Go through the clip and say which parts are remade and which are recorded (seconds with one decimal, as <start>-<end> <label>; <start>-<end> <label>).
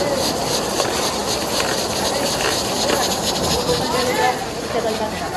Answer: 0.0-5.4 recorded